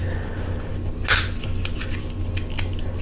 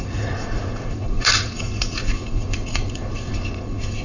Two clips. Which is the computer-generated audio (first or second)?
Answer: second